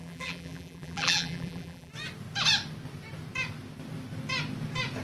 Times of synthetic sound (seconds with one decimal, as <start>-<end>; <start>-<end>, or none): 0.0-1.9